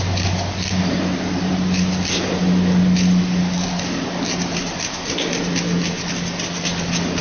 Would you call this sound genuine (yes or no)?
yes